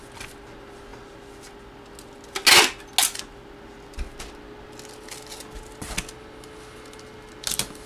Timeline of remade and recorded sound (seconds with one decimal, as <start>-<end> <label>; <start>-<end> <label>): 0.0-7.9 recorded